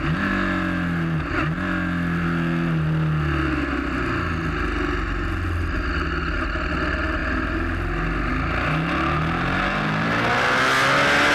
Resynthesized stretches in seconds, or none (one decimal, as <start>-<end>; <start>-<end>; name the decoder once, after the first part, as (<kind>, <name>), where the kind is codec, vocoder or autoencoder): none